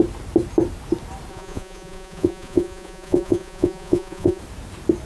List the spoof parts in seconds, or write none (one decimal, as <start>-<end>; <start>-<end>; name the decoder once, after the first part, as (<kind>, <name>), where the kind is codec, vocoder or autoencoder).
1.3-4.4 (vocoder, Vocos)